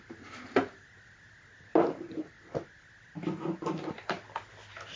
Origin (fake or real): real